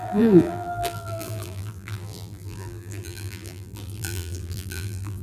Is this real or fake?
fake